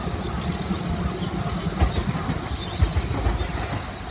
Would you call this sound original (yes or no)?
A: yes